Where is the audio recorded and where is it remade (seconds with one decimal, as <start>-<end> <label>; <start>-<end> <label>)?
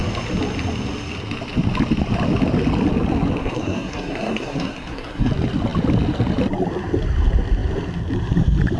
0.0-3.4 recorded; 3.4-5.3 remade; 5.3-8.8 recorded